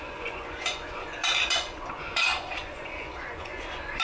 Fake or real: fake